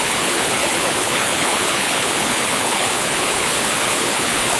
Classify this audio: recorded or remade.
remade